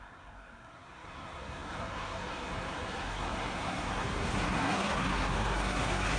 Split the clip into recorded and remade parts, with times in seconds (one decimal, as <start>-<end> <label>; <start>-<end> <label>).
0.0-6.2 remade